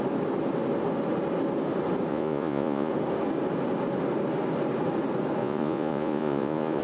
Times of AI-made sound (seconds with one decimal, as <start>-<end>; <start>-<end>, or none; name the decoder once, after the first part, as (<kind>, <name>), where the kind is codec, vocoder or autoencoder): 2.1-2.9 (vocoder, Vocos); 5.4-6.8